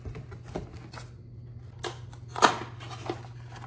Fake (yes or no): no